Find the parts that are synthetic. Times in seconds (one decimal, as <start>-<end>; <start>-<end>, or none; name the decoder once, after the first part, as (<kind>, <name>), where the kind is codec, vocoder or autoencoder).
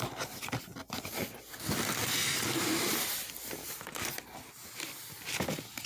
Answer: none